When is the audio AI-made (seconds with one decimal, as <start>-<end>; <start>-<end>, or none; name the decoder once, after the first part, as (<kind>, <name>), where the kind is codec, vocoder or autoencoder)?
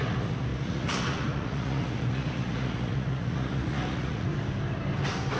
0.0-4.3 (vocoder, Vocos)